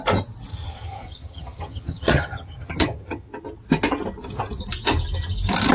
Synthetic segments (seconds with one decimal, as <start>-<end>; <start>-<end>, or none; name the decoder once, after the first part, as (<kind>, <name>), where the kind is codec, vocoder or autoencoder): 0.5-3.3 (vocoder, HiFi-GAN)